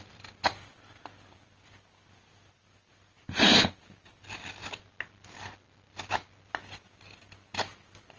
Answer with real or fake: real